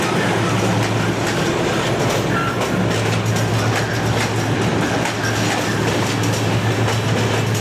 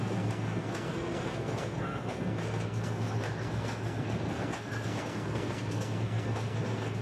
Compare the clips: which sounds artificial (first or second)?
second